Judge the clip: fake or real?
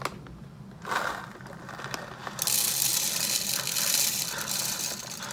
real